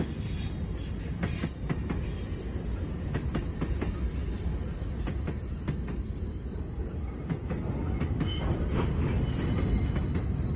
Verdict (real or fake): real